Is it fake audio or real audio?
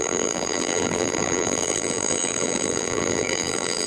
fake